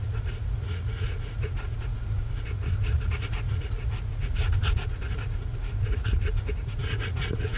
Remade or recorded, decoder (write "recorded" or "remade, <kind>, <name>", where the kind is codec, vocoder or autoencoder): remade, vocoder, Vocos